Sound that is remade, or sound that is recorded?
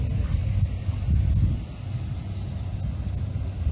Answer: recorded